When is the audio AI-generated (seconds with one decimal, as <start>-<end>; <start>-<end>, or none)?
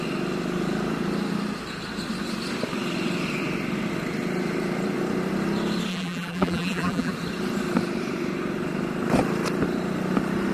5.9-7.1